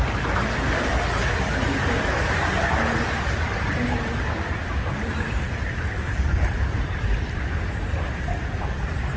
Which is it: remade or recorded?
recorded